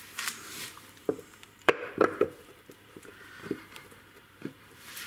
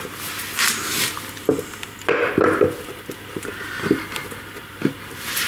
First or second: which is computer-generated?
first